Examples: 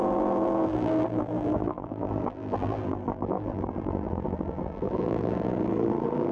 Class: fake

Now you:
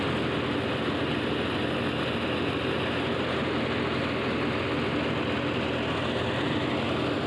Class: real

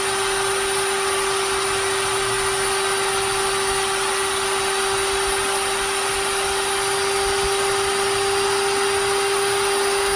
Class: real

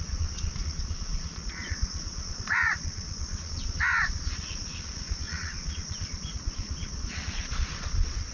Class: fake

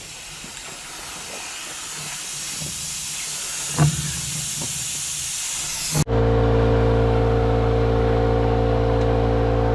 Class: real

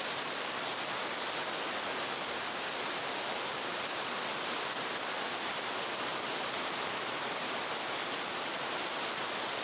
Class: real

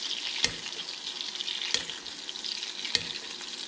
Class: real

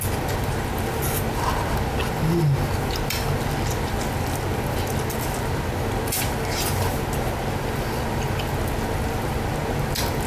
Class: real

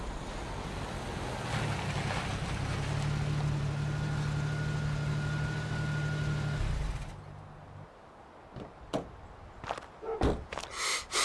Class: real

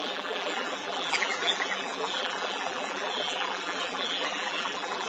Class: fake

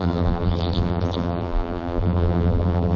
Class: fake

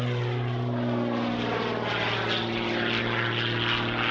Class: real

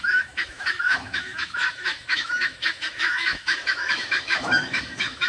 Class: fake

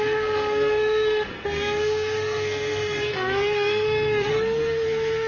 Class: fake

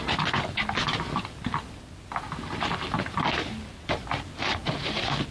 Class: real